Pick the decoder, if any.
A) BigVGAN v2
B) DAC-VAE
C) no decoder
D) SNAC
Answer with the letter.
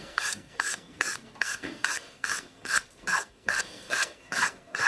D